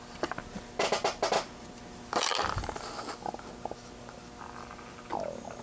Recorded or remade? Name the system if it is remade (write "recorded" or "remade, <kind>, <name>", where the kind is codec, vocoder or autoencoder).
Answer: recorded